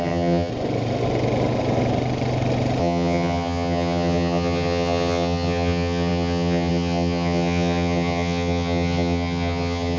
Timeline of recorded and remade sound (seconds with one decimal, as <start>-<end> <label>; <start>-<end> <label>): 0.0-0.5 remade; 0.5-2.8 recorded; 2.8-10.0 remade